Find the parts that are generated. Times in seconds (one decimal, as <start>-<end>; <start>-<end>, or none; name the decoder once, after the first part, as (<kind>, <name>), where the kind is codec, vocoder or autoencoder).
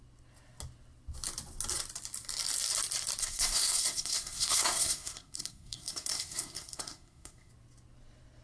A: 3.2-7.5 (codec, SNAC)